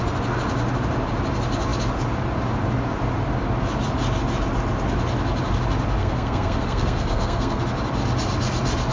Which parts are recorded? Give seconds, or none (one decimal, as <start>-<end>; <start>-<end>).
0.0-6.0; 7.6-8.9